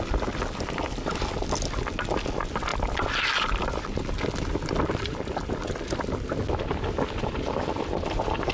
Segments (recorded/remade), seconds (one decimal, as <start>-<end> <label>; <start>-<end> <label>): 0.0-8.5 recorded